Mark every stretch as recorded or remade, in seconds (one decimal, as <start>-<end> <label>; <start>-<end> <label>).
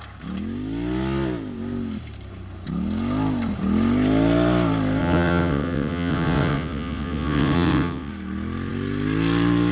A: 0.0-5.0 recorded; 5.0-8.1 remade; 8.1-9.7 recorded